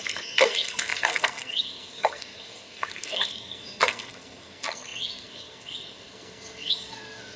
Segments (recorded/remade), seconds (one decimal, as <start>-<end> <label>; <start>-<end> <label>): 0.0-7.4 remade